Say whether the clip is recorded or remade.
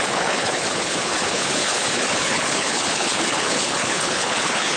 remade